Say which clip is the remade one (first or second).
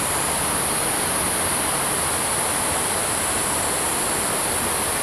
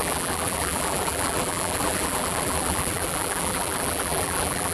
second